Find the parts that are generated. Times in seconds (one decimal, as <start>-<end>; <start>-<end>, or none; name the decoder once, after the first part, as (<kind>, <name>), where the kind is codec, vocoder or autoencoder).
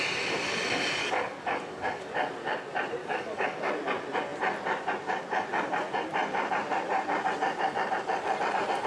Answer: 1.0-2.1 (codec, DAC); 3.0-3.6